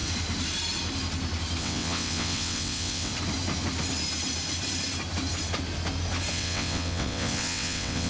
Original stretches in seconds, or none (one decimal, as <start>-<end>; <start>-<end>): 0.0-1.6; 3.1-6.3